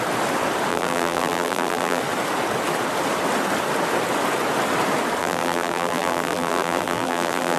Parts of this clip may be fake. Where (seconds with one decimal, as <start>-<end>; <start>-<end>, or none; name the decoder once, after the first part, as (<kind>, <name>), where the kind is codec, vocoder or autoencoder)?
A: 0.7-2.0 (vocoder, BigVGAN v2); 5.2-7.6